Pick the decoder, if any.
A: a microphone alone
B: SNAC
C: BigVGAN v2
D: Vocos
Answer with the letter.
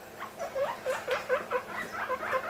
C